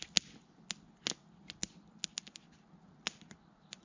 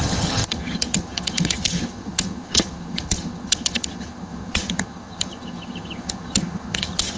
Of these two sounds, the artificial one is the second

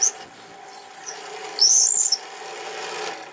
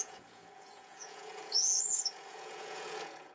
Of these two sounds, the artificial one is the second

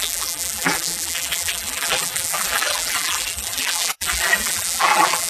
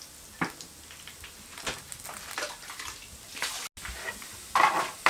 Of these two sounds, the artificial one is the first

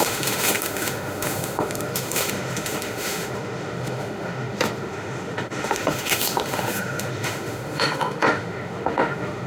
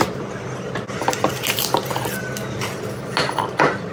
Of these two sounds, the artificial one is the first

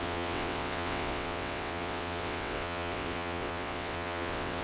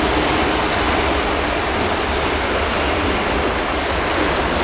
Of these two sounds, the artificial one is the first